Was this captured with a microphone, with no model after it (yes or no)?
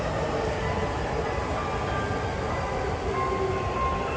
yes